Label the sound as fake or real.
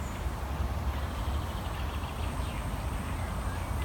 real